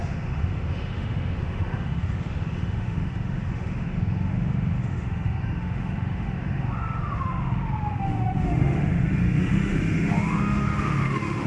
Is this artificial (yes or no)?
yes